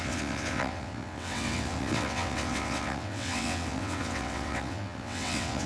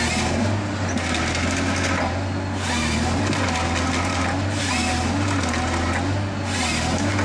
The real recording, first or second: second